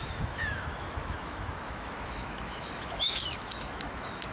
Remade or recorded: remade